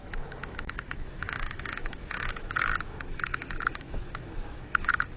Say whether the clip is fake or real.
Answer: fake